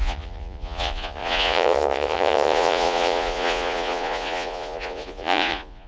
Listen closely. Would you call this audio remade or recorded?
remade